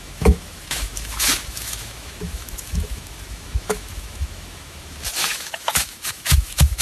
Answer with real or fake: fake